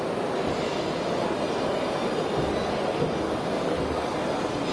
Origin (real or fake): real